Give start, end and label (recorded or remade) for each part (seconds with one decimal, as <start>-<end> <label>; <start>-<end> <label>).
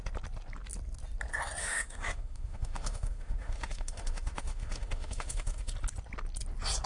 0.0-1.6 recorded; 1.6-5.7 remade; 5.7-6.9 recorded